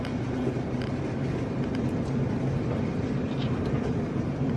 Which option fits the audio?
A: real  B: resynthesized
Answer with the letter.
A